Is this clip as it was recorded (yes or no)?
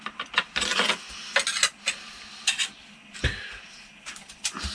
yes